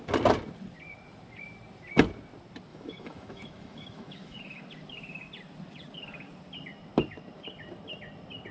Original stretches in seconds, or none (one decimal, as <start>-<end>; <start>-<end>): 0.0-2.7; 4.6-8.5